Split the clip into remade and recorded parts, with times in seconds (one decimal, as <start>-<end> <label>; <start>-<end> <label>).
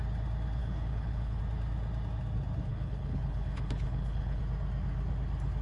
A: 0.0-0.6 recorded; 0.6-1.4 remade; 1.4-2.7 recorded; 2.7-4.4 remade; 4.4-5.6 recorded